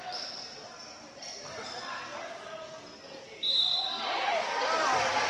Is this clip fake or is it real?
fake